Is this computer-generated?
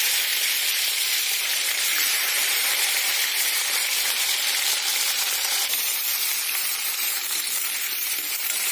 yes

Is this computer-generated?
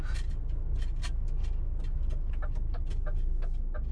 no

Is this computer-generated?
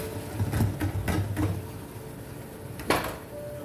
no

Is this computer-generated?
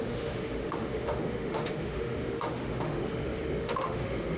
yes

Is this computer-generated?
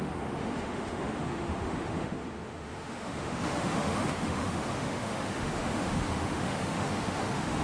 yes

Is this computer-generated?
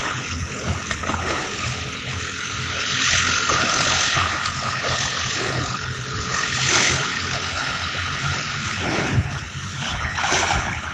yes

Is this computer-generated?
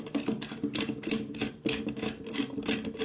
no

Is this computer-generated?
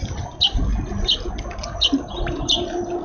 no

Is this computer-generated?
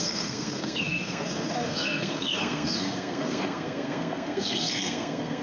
yes